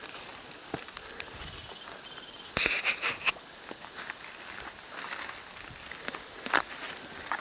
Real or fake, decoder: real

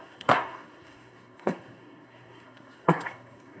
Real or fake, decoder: fake, codec, SNAC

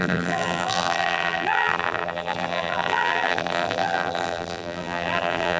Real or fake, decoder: fake, vocoder, BigVGAN v2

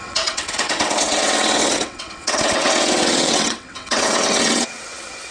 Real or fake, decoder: fake, vocoder, WaveNeXt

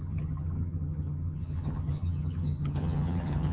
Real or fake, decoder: fake, vocoder, HiFi-GAN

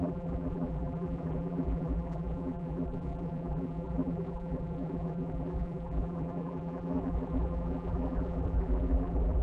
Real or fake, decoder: fake, vocoder, BigVGAN v2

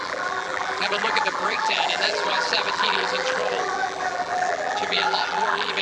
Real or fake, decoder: fake, vocoder, BigVGAN v2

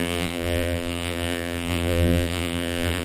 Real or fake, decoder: fake, vocoder, BigVGAN v2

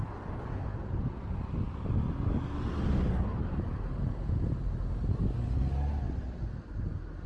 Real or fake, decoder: real